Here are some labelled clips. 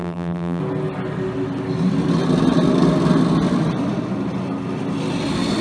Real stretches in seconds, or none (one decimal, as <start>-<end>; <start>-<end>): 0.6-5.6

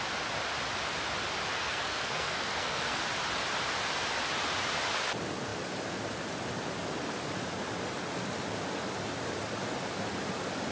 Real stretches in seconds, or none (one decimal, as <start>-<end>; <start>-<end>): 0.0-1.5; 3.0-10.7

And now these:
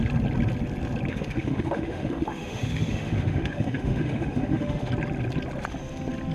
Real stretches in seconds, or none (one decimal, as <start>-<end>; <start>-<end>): 0.0-1.1; 4.9-6.3